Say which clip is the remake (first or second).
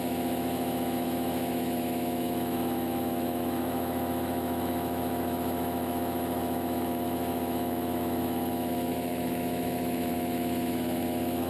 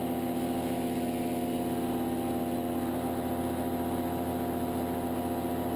first